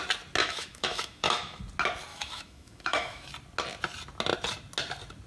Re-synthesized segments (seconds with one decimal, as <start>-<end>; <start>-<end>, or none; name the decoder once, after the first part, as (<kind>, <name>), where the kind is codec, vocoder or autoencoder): 0.4-1.6 (autoencoder, DAC-VAE); 2.1-3.3